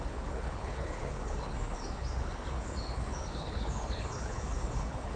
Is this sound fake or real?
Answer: fake